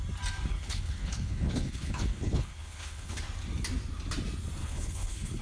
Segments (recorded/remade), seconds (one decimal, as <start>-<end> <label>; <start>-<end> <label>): 0.0-0.5 recorded; 0.5-3.2 remade; 3.2-4.6 recorded; 4.6-5.4 remade